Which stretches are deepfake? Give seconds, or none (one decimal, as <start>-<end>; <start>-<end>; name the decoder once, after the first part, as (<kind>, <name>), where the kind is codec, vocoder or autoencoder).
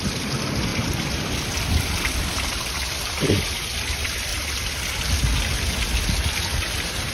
0.0-4.3 (vocoder, BigVGAN v2)